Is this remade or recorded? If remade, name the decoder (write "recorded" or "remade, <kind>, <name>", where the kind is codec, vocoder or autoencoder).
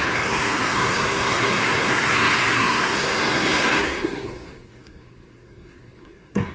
remade, codec, SNAC